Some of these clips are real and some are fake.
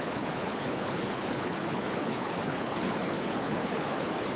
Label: fake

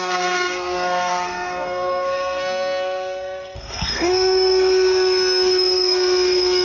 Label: fake